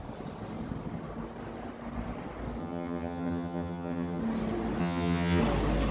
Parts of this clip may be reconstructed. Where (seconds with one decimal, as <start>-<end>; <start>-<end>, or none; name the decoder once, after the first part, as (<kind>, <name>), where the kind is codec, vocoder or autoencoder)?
2.6-4.2 (vocoder, HiFi-GAN); 4.8-5.4

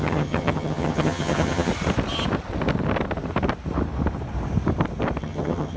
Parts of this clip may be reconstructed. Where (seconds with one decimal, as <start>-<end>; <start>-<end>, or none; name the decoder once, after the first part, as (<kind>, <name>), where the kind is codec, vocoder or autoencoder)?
0.0-1.7 (vocoder, HiFi-GAN); 5.2-5.8

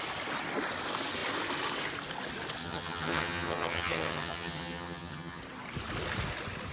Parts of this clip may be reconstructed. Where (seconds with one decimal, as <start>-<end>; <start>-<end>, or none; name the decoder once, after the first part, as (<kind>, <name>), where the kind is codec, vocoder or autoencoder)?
2.6-5.4 (vocoder, HiFi-GAN)

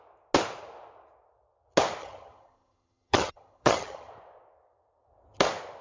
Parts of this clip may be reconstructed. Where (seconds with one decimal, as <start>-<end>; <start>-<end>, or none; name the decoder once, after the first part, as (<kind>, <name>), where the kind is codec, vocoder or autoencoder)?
2.0-4.1 (vocoder, HiFi-GAN)

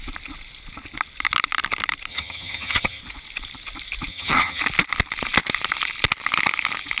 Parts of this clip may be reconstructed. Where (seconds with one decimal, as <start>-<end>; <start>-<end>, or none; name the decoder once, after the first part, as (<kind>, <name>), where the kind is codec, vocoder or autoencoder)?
2.1-3.0 (vocoder, HiFi-GAN); 4.1-4.6

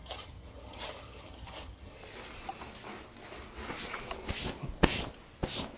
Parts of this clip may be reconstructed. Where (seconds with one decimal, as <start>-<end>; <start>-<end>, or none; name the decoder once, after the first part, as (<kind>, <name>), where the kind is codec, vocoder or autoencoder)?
0.0-1.9 (vocoder, HiFi-GAN)

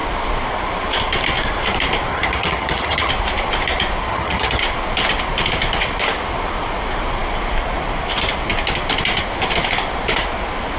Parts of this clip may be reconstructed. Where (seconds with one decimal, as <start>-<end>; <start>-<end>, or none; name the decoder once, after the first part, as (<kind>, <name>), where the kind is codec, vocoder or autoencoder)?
2.1-3.1 (vocoder, HiFi-GAN); 4.1-4.6

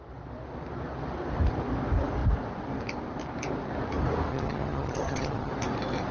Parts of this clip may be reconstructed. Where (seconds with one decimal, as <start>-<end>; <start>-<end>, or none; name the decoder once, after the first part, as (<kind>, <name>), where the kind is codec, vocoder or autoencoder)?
4.3-5.5 (vocoder, HiFi-GAN)